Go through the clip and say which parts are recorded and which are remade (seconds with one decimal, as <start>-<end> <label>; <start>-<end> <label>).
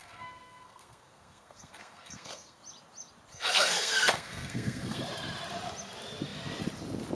0.0-2.6 remade; 2.6-3.3 recorded; 3.3-5.0 remade; 5.0-7.1 recorded